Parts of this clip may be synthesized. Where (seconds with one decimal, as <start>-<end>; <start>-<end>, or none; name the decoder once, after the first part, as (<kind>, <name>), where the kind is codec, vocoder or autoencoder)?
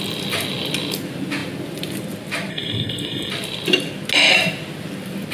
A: 2.5-3.3 (codec, SNAC)